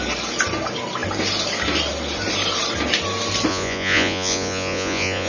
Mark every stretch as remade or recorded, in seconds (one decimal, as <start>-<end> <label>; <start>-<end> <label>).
0.0-3.5 recorded; 3.5-5.3 remade